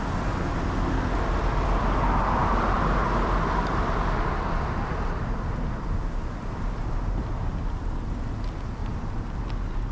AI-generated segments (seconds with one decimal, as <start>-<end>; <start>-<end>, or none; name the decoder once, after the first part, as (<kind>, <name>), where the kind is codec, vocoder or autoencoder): 2.4-4.0 (vocoder, BigVGAN v2); 8.8-9.4